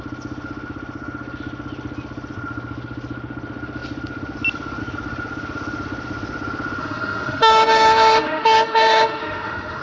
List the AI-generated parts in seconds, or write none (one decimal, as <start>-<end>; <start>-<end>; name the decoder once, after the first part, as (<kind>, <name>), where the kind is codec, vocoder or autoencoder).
6.8-9.8 (autoencoder, DAC-VAE)